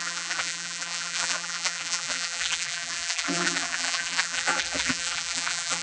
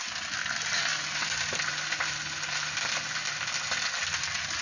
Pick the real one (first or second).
second